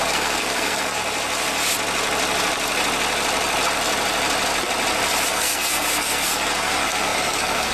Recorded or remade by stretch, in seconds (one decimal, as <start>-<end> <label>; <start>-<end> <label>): 0.0-1.0 remade; 1.0-5.3 recorded; 5.3-7.7 remade